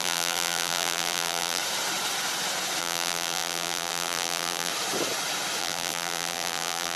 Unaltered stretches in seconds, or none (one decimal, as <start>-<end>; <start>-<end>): 1.6-2.8; 4.7-5.6